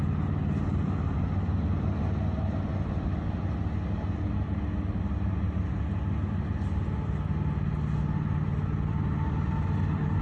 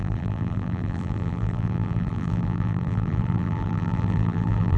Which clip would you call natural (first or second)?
first